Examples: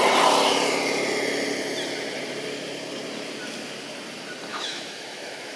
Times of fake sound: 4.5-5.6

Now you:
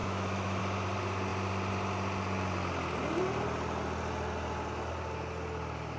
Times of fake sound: 0.0-0.6

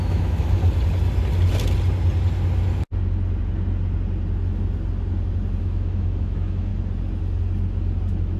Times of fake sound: 0.0-0.6; 5.6-6.7

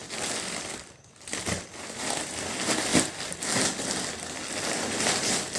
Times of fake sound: none

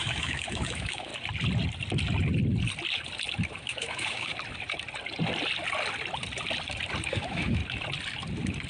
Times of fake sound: 0.0-1.1; 3.5-4.3; 7.1-7.6